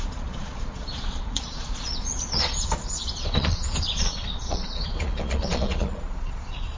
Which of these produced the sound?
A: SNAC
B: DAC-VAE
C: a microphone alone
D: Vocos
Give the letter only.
D